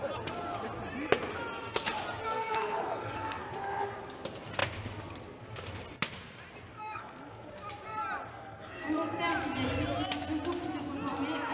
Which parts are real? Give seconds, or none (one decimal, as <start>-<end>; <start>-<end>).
0.0-2.3; 3.5-6.7; 7.5-8.3; 9.2-11.5

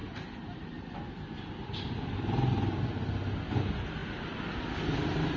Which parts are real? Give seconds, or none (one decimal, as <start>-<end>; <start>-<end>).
0.0-5.4